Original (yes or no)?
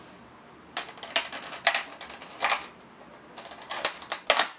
yes